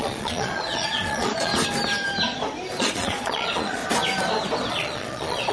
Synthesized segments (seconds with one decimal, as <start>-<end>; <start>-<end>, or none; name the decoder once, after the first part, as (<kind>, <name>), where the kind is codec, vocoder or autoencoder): 0.0-1.5 (vocoder, Vocos); 2.8-3.8; 4.7-5.5